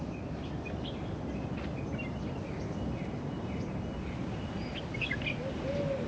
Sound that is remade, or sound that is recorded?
recorded